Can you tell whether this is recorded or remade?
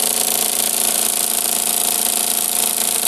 recorded